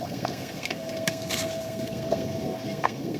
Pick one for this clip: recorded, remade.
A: remade